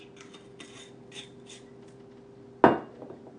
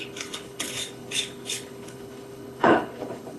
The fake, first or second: second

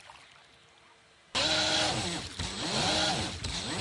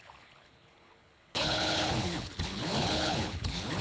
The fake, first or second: second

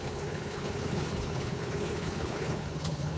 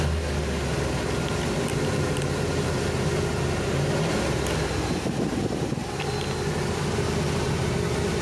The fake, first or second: first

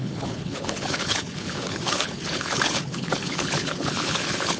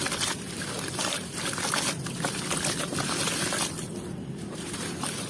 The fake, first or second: first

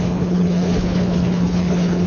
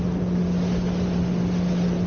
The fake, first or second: first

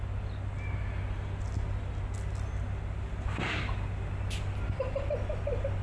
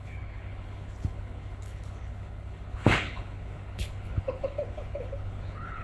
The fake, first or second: second